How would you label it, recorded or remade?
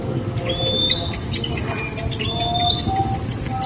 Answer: recorded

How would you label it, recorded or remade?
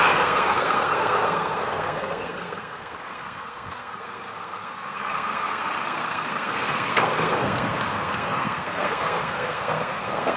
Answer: remade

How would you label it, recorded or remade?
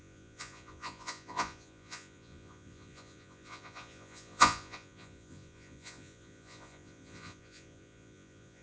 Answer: remade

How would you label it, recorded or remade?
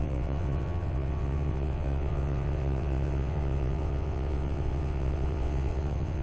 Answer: remade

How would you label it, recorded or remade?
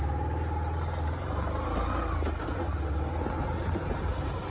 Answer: recorded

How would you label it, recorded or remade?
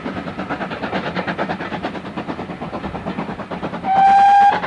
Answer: recorded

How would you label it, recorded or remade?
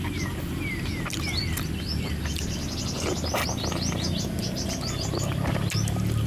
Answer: recorded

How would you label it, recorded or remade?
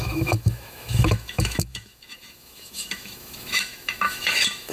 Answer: remade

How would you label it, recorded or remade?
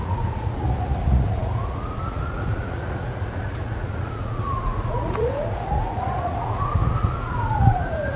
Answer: remade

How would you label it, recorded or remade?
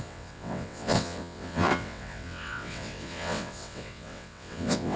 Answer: remade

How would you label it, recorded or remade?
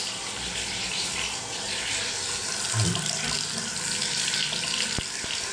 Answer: recorded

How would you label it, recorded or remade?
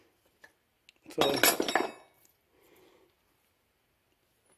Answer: recorded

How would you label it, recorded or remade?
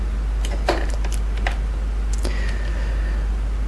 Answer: recorded